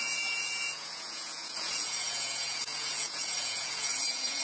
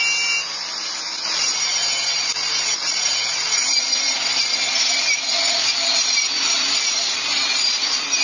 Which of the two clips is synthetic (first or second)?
first